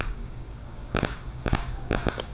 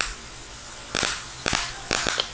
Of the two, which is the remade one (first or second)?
first